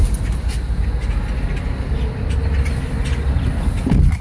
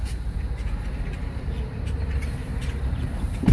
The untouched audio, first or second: first